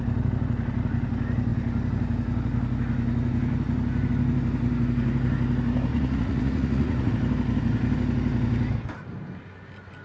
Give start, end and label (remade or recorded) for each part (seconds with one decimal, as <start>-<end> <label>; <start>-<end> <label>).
0.0-5.9 recorded; 5.9-7.1 remade; 7.1-10.0 recorded